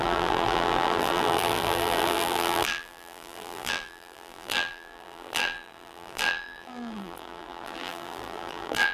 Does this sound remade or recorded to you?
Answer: remade